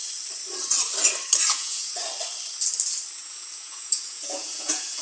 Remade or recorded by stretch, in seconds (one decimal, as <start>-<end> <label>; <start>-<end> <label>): 0.0-1.5 recorded; 1.5-2.0 remade; 2.0-3.2 recorded; 3.2-5.0 remade